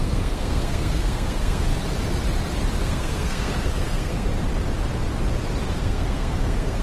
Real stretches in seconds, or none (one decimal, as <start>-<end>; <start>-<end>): 1.7-2.8; 4.3-5.7